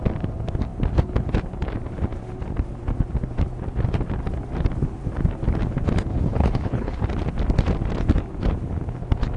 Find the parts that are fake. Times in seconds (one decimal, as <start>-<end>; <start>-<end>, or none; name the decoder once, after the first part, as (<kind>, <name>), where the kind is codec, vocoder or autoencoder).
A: 6.1-7.0 (codec, HILCodec)